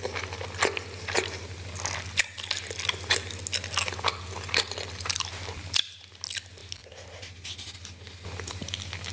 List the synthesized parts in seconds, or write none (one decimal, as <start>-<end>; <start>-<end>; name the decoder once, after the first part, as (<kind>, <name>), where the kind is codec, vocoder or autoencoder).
none